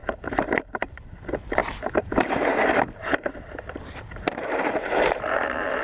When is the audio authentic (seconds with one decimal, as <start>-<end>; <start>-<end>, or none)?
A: none